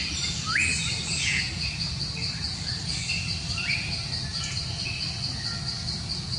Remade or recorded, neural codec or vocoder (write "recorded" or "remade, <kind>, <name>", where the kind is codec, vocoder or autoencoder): recorded